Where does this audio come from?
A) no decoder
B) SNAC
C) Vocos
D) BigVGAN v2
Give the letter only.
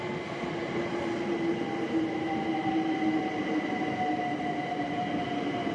A